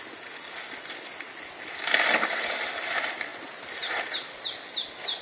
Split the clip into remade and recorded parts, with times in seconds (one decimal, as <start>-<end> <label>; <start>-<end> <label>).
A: 0.0-5.2 recorded